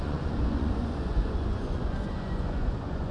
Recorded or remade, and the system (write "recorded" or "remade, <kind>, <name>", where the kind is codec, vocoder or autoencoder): remade, vocoder, Vocos